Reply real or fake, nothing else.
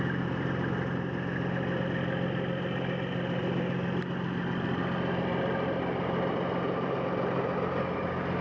real